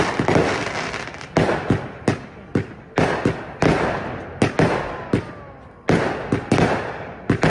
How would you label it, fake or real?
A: real